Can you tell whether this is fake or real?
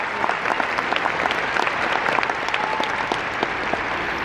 real